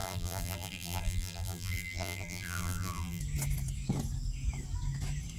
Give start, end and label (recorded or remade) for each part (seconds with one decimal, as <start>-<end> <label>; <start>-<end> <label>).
0.0-3.2 remade; 3.2-5.4 recorded